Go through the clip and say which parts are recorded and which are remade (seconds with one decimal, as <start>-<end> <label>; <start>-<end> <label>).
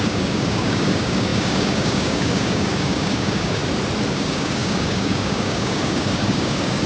0.0-3.6 remade; 3.6-4.1 recorded; 4.1-6.9 remade